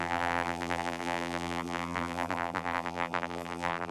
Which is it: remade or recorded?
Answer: remade